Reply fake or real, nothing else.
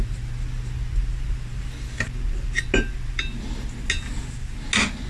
real